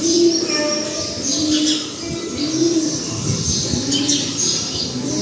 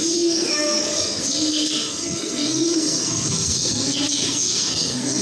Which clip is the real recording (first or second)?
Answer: first